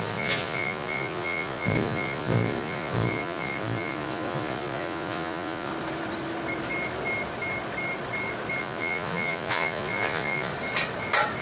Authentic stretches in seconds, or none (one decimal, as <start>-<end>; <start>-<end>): 5.7-8.6; 10.5-11.4